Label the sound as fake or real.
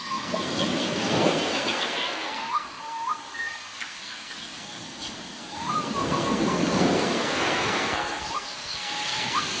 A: fake